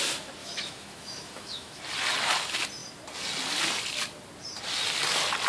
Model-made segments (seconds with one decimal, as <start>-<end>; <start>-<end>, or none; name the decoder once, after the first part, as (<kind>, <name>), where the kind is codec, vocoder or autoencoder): 0.4-1.8 (autoencoder, DAC-VAE)